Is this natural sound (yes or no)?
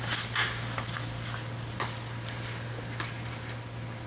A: yes